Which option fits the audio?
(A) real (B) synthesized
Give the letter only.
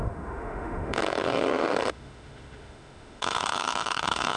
B